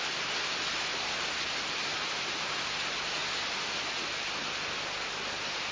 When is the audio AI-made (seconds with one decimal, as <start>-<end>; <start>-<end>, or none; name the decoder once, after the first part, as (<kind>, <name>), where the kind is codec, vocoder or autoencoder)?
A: 0.9-2.7 (vocoder, BigVGAN v2)